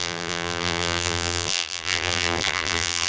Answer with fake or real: fake